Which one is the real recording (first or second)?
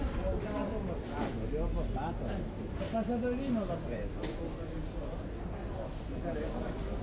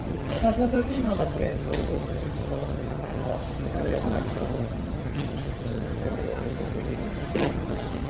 first